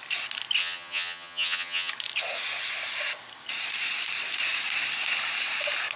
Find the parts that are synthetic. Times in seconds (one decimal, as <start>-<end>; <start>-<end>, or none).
0.6-1.9